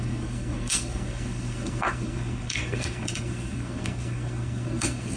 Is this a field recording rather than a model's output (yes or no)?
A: no